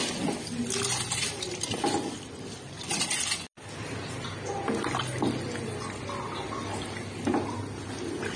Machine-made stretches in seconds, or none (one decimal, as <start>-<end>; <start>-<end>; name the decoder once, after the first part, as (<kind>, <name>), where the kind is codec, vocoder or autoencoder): none